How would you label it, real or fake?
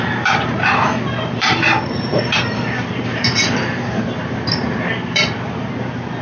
fake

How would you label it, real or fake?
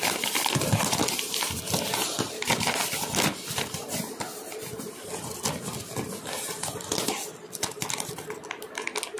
real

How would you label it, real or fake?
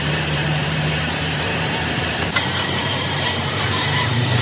fake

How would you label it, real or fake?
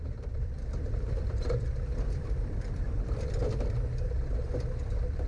fake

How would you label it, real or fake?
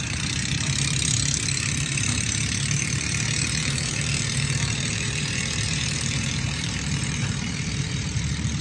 fake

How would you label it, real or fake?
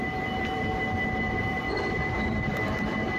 fake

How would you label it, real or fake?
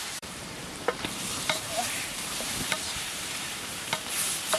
fake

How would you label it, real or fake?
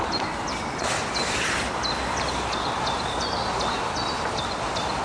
real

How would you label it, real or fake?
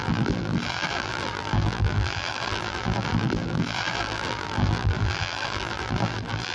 fake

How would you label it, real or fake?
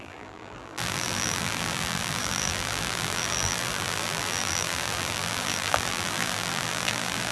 fake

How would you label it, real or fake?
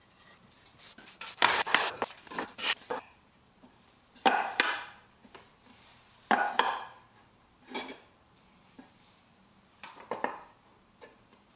fake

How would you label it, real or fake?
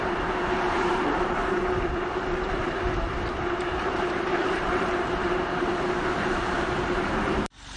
fake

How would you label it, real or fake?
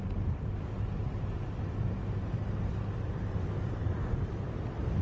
real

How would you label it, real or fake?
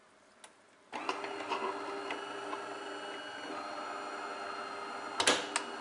real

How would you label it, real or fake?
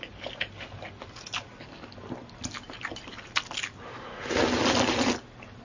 real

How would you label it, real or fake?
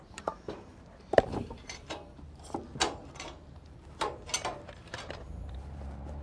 fake